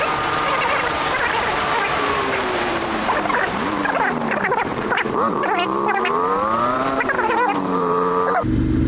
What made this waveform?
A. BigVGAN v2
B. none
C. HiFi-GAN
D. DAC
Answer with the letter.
A